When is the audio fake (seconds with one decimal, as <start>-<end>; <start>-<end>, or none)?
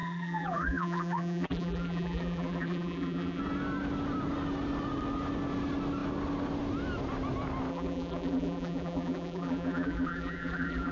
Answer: 0.0-3.4; 7.7-10.9